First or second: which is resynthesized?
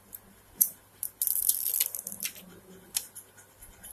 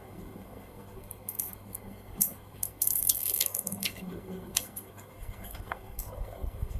second